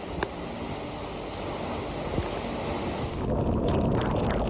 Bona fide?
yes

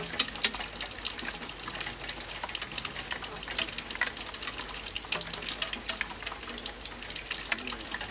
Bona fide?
yes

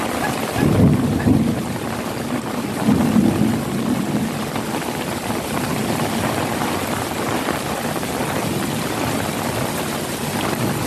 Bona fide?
yes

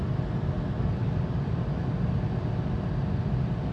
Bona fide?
yes